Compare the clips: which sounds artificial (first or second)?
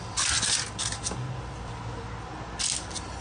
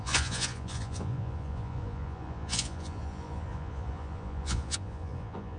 second